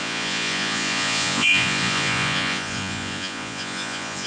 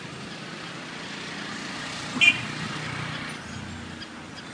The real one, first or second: second